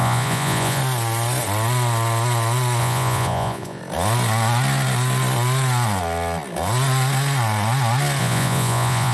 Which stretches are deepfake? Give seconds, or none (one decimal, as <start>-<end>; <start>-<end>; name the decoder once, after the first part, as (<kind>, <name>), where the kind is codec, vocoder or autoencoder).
0.0-0.8 (vocoder, Vocos); 2.8-3.8; 8.2-9.1

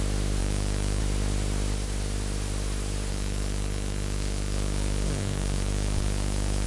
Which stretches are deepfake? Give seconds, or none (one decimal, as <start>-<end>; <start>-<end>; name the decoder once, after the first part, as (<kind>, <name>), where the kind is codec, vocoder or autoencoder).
0.4-1.0 (autoencoder, DAC-VAE); 3.1-6.7

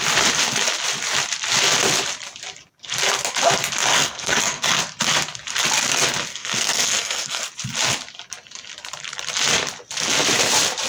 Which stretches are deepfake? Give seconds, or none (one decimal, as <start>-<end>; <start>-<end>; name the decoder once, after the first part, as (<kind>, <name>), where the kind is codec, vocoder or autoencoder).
3.9-4.8 (codec, SNAC); 6.3-7.4

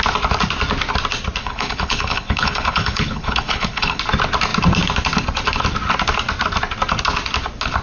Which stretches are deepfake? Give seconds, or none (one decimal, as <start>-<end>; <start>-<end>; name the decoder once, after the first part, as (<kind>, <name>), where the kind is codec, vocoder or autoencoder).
1.4-4.0 (codec, HILCodec)

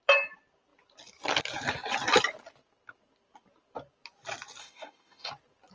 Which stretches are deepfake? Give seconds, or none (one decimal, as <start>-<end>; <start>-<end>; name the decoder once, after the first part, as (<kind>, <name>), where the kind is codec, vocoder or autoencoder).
4.6-5.3 (autoencoder, DAC-VAE)

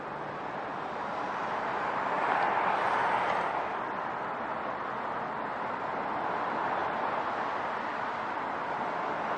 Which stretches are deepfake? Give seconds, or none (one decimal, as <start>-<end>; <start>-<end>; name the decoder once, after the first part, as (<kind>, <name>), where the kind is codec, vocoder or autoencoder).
0.7-2.1 (vocoder, BigVGAN v2); 6.8-7.6